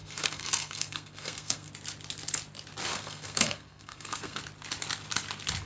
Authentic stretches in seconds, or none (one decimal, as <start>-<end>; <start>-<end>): 1.7-2.9; 4.4-5.7